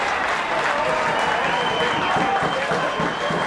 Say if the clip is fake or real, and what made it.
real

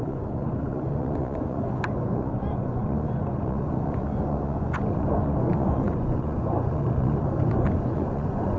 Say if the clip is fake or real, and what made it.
fake, vocoder, Vocos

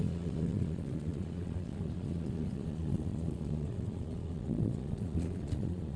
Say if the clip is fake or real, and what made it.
fake, vocoder, Vocos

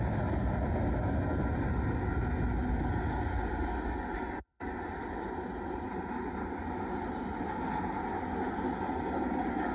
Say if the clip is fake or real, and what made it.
real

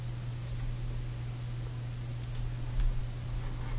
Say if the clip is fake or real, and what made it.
real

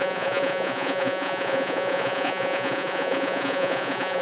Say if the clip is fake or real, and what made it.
fake, vocoder, Vocos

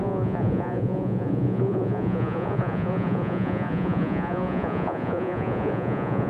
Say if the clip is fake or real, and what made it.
fake, vocoder, Vocos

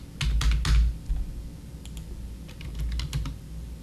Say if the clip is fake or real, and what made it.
real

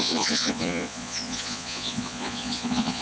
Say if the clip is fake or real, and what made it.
fake, vocoder, Vocos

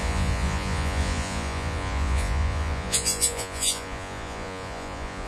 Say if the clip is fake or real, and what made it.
fake, vocoder, Vocos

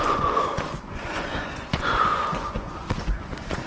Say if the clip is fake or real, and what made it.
fake, vocoder, Vocos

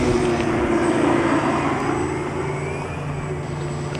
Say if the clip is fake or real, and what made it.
real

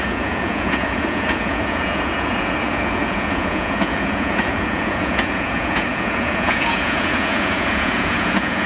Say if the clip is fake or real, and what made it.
fake, vocoder, Vocos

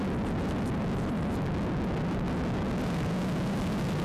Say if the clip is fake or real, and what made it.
real